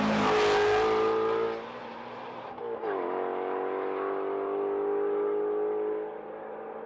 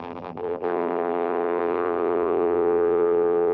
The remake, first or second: second